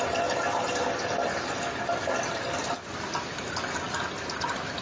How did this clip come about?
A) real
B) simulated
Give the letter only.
A